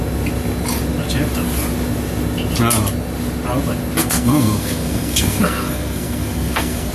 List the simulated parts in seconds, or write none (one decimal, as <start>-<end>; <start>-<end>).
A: 4.0-6.9